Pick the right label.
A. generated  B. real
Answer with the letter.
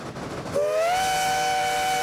B